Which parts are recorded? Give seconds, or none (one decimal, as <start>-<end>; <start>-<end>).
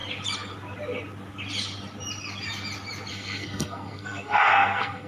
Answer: 0.0-3.1